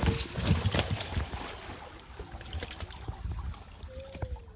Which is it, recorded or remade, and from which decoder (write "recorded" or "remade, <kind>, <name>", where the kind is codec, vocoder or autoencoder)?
recorded